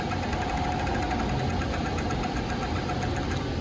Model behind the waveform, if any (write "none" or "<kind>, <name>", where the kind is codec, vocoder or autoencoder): none